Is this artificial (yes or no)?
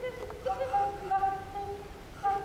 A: no